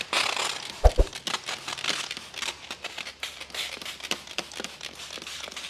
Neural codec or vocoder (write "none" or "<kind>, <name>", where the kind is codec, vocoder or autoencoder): none